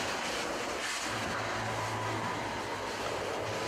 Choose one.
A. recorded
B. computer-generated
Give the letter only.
A